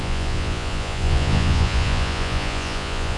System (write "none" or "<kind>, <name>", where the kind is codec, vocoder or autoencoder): vocoder, Vocos